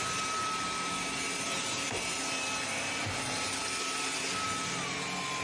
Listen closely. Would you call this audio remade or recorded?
recorded